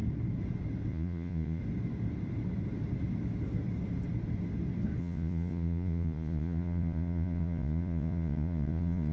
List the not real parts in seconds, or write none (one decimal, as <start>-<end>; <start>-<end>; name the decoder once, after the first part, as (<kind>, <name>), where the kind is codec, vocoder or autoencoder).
0.9-1.6 (vocoder, Vocos); 5.0-9.1